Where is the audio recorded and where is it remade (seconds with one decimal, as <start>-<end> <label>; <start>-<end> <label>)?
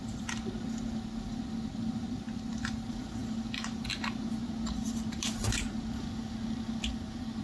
0.0-7.4 recorded